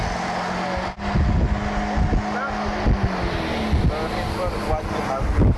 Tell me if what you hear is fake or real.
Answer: real